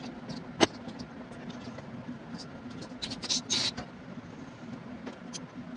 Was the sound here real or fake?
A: real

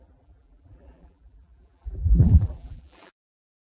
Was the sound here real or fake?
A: fake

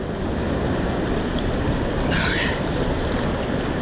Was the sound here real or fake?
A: real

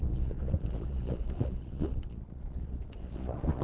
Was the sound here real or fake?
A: fake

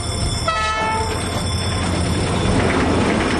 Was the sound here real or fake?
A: real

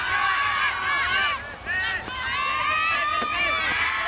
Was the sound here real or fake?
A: real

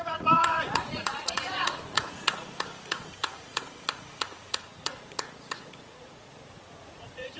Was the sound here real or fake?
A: fake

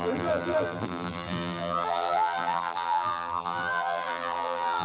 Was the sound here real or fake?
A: fake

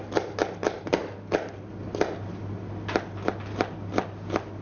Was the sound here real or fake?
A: real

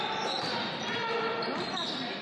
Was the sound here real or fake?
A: real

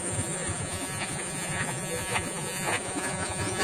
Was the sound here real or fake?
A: fake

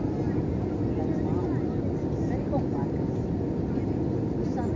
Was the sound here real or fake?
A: real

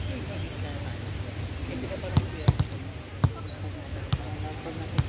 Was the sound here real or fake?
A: real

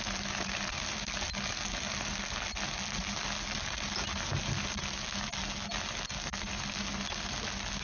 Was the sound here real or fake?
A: real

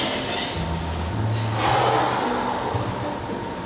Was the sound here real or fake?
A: real